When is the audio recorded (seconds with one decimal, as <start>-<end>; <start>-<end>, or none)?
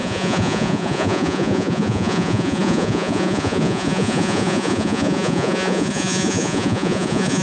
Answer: none